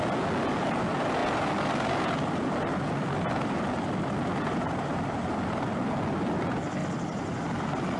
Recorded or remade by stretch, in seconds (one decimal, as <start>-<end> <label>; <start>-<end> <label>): 0.0-8.0 recorded